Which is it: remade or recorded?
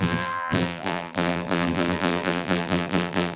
remade